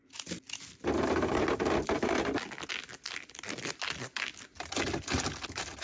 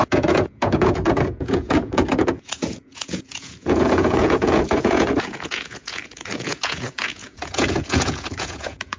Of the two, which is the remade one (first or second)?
second